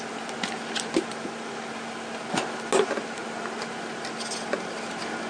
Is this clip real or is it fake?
real